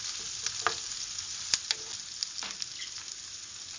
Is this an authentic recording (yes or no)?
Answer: yes